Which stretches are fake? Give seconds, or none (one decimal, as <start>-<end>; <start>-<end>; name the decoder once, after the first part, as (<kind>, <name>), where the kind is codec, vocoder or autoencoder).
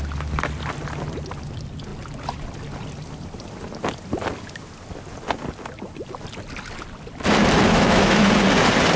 7.7-8.3 (autoencoder, DAC-VAE)